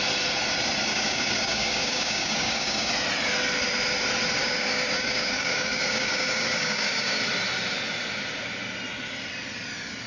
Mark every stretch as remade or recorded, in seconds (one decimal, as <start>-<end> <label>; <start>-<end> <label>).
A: 0.0-0.9 recorded; 0.9-2.9 remade; 2.9-4.4 recorded; 4.4-7.2 remade; 7.2-10.1 recorded